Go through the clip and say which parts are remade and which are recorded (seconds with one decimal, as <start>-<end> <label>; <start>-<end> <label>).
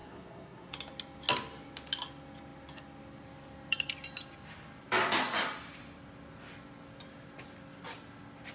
0.0-0.7 remade; 0.7-8.5 recorded